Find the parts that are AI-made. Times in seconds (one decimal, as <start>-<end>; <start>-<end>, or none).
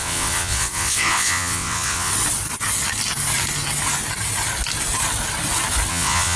0.0-2.1; 5.9-6.4